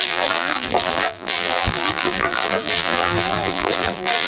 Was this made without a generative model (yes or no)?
no